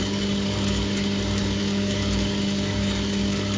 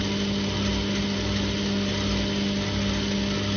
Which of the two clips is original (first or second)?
second